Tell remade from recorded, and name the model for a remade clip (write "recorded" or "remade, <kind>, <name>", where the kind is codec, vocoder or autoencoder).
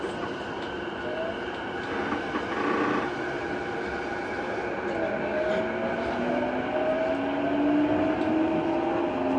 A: recorded